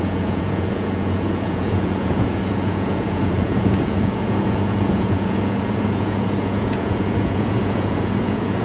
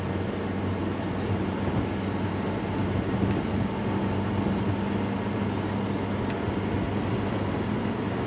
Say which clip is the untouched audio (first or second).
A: second